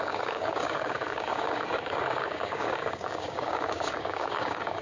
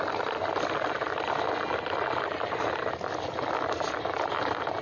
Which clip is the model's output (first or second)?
first